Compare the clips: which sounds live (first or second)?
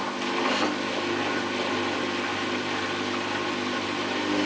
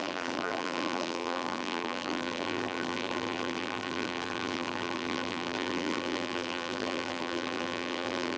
first